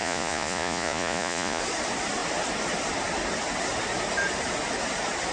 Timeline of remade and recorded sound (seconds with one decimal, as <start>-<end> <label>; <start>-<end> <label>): 0.0-1.6 remade; 1.6-5.3 recorded